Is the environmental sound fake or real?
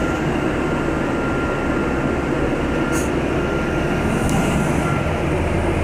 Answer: real